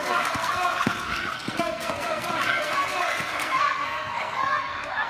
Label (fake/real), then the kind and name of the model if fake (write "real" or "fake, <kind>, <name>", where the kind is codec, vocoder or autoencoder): fake, codec, SNAC